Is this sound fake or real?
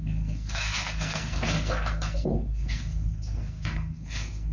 fake